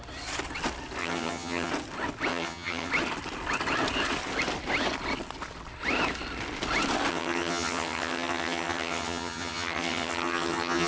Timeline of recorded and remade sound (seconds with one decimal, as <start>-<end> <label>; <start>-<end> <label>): 0.0-1.0 recorded; 1.0-1.7 remade; 1.7-2.3 recorded; 2.3-2.9 remade; 2.9-7.1 recorded; 7.1-10.9 remade